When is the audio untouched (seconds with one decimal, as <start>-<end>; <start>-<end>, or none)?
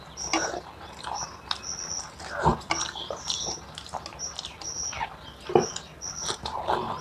0.0-2.5; 3.5-4.1; 4.7-7.0